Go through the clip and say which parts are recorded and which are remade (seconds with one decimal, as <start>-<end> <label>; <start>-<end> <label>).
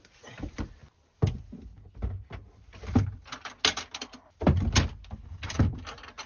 0.0-6.3 recorded